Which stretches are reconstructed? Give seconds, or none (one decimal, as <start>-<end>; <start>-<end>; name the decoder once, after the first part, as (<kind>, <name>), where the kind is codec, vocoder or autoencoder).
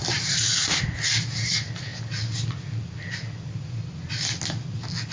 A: none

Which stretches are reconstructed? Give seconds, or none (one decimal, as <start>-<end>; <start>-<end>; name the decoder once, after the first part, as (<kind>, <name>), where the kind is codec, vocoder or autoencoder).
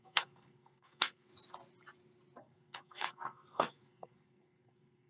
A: 0.0-1.3 (codec, SNAC); 2.4-5.1